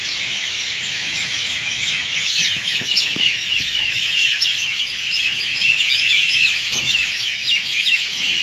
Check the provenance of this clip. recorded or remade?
remade